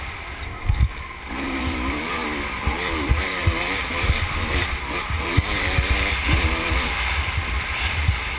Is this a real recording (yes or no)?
no